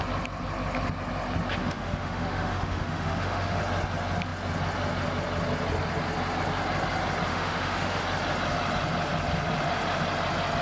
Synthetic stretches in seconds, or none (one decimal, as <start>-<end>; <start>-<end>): 1.6-3.6; 7.3-8.0